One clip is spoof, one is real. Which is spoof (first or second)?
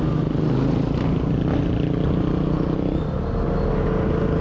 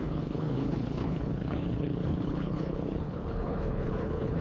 second